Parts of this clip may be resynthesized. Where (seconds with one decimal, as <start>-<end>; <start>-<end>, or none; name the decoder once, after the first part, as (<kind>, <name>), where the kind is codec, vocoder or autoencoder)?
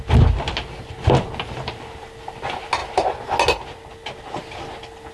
none